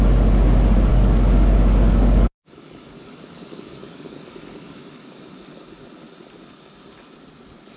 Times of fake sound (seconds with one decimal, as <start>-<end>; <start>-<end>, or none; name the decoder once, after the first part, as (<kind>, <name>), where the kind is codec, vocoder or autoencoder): 0.9-5.2 (codec, DAC)